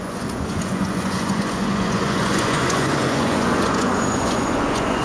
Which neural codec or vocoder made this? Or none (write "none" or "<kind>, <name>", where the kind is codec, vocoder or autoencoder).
vocoder, Vocos